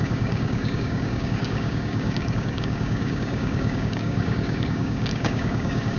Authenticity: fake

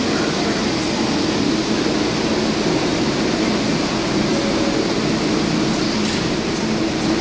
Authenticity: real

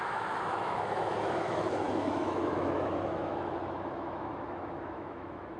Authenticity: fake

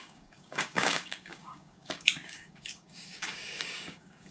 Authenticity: fake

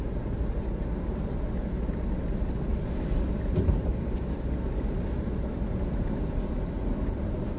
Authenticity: real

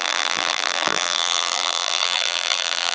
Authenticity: fake